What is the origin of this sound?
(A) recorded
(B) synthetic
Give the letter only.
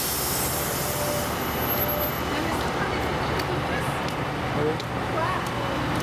A